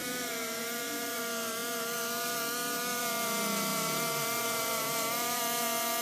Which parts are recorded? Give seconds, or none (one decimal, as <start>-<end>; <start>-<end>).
1.2-3.7; 5.4-6.0